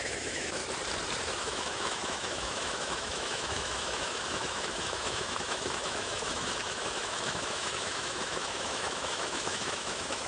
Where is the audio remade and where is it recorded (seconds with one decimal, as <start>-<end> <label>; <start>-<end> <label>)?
0.0-0.6 remade; 0.6-1.2 recorded; 1.2-10.3 remade